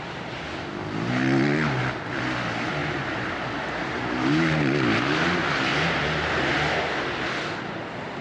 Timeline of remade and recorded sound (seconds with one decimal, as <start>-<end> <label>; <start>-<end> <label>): 0.0-2.8 recorded; 2.8-4.1 remade; 4.1-5.7 recorded; 5.7-6.5 remade; 6.5-8.2 recorded

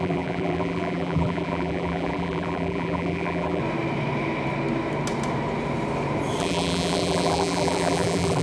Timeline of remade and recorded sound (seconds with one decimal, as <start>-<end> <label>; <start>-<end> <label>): 0.0-3.6 remade; 3.6-6.4 recorded; 6.4-8.4 remade

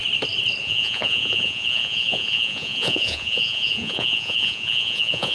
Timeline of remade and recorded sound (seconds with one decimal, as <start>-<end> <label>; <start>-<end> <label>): 0.0-0.6 recorded; 0.6-5.3 remade

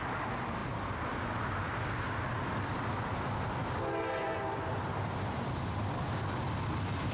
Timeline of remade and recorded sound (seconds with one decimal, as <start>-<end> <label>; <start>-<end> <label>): 0.0-7.1 recorded

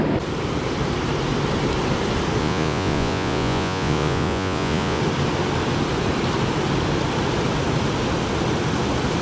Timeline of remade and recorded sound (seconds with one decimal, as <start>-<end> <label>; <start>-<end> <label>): 0.0-2.4 recorded; 2.4-5.0 remade; 5.0-9.2 recorded

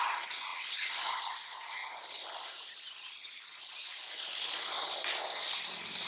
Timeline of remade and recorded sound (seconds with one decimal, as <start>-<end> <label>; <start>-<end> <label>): 0.0-0.5 recorded; 0.5-1.3 remade; 1.3-1.8 recorded; 1.8-3.6 remade; 3.6-6.1 recorded